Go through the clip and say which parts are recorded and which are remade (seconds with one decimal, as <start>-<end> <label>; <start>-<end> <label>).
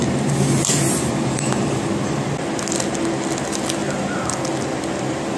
0.0-5.4 recorded